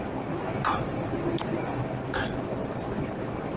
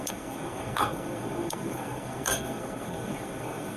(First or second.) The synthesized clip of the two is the second